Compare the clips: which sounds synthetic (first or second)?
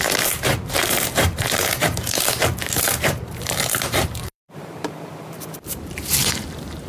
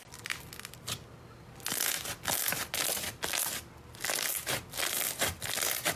first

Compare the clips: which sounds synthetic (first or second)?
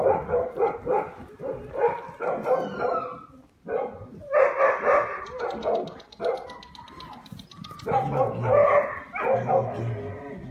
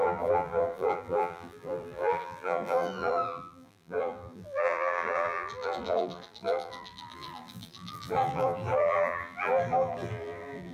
second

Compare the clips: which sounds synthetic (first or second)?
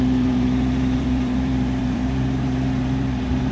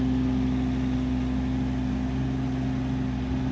first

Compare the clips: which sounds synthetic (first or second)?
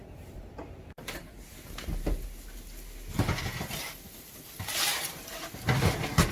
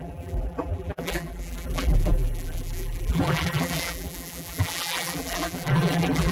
second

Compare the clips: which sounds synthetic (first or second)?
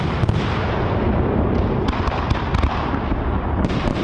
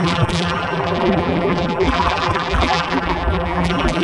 second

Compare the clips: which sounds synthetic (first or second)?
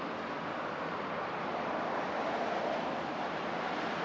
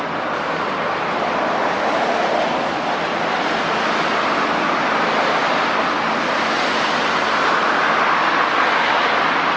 first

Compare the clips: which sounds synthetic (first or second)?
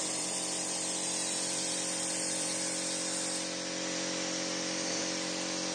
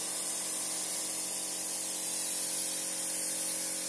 first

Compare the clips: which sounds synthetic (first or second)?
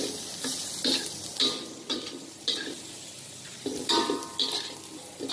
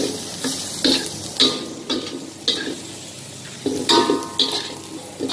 first